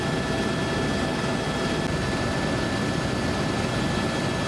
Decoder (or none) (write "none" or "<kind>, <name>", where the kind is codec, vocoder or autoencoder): none